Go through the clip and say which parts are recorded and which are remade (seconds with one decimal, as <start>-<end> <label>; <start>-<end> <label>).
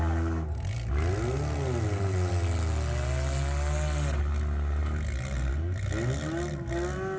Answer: 0.0-7.2 recorded